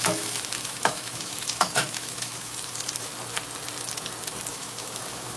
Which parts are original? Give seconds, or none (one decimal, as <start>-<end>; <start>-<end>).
3.1-4.5